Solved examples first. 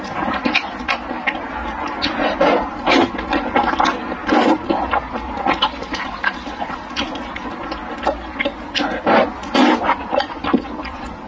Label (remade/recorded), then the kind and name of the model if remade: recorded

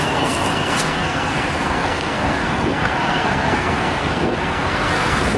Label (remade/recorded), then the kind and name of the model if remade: remade, codec, SNAC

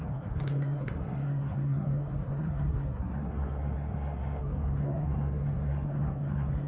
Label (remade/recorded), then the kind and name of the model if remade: remade, codec, SNAC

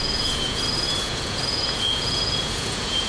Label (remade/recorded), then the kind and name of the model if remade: remade, vocoder, Vocos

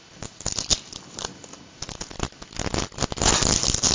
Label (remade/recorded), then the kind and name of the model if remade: recorded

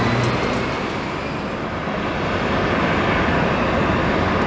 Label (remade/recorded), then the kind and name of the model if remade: recorded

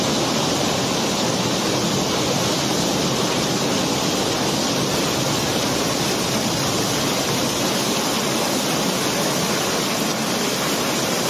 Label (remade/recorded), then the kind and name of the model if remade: recorded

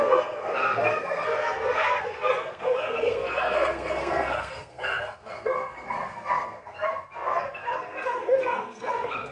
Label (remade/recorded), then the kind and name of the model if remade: remade, codec, SNAC